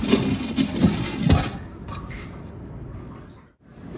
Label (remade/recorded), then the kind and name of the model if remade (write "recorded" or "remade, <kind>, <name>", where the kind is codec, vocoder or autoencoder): recorded